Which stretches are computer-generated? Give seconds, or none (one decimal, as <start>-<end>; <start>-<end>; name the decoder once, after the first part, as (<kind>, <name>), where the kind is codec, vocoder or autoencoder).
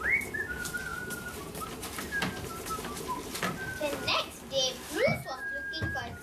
0.9-3.4 (vocoder, BigVGAN v2)